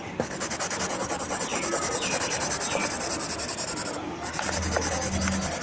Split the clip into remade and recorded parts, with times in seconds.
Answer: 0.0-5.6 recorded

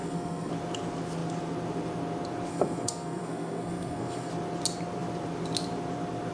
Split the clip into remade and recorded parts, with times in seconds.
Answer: 0.0-0.5 remade; 0.5-2.5 recorded; 2.5-4.3 remade; 4.3-6.3 recorded

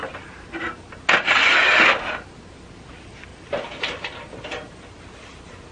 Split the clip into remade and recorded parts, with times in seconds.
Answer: 0.0-3.3 recorded; 3.3-5.0 remade; 5.0-5.7 recorded

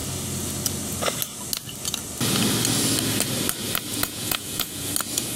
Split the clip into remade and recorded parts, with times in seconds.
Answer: 0.0-3.9 recorded; 3.9-4.9 remade; 4.9-5.4 recorded

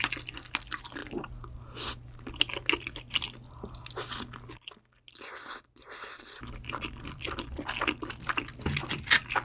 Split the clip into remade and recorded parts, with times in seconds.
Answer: 0.0-9.4 recorded

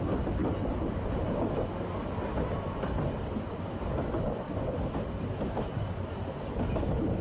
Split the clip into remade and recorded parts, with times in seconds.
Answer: 0.0-7.2 recorded

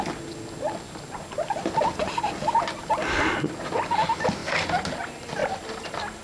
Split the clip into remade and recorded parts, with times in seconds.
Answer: 0.0-6.2 recorded

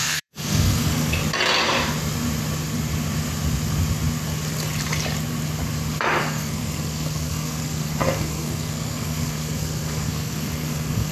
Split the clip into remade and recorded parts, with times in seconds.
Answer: 0.0-1.2 remade; 1.2-6.2 recorded; 6.2-11.1 remade